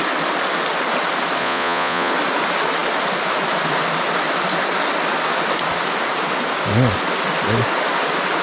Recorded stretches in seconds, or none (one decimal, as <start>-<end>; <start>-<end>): 0.0-1.4; 2.1-8.4